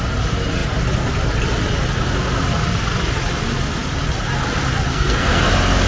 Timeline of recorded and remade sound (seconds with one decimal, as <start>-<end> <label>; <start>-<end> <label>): 0.0-4.9 recorded; 4.9-5.5 remade; 5.5-5.9 recorded